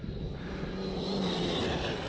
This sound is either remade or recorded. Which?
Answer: recorded